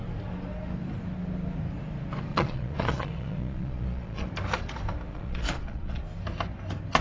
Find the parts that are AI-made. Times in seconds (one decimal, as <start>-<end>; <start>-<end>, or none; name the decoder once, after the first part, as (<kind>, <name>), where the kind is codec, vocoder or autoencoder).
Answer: 2.3-4.3 (vocoder, Vocos); 5.1-6.0